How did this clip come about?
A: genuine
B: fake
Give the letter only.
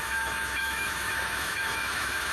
B